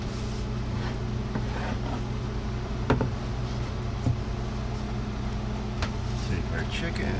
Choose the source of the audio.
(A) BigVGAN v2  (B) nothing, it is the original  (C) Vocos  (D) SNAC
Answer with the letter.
B